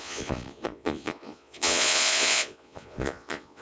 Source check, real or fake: fake